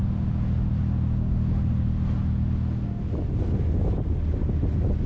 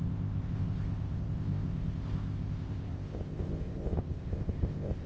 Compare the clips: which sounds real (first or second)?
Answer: first